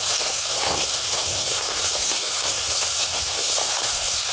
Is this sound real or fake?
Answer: fake